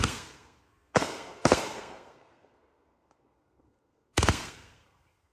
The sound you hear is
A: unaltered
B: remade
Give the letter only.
B